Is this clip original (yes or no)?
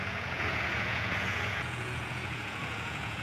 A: no